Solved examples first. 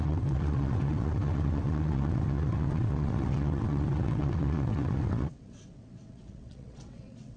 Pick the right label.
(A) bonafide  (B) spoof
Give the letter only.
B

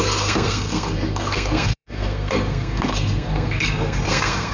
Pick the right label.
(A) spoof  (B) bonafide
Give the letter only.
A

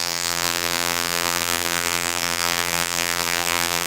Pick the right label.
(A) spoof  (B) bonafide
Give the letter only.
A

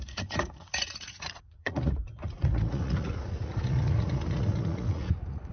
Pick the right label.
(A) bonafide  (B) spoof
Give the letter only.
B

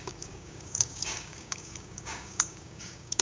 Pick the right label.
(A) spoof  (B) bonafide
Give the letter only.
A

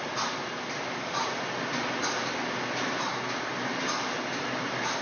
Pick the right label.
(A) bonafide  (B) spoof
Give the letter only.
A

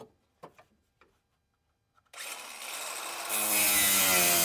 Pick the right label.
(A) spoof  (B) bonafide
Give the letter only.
B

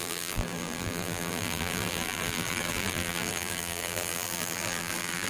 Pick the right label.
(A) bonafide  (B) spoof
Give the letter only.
B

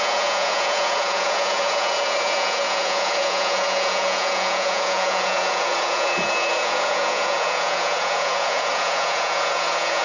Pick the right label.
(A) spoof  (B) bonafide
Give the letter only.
A